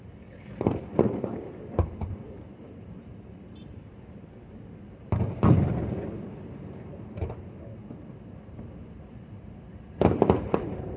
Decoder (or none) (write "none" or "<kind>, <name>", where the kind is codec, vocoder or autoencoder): vocoder, BigVGAN v2